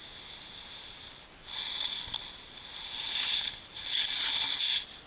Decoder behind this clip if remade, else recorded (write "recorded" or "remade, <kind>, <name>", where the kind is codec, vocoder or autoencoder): recorded